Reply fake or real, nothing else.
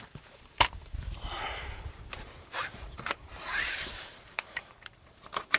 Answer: fake